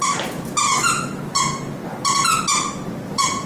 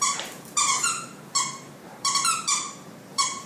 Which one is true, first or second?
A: first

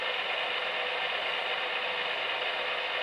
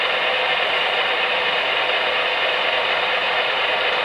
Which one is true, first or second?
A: first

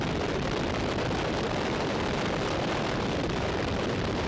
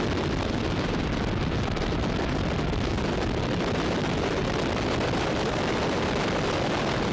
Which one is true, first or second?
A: second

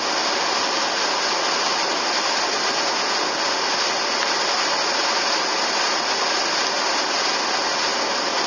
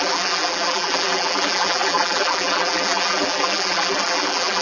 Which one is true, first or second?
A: first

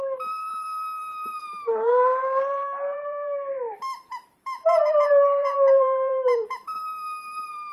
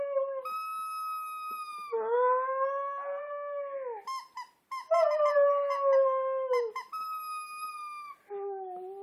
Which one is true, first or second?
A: second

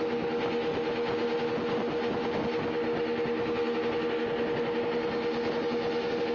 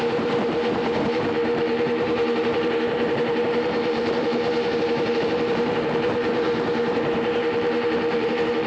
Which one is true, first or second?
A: first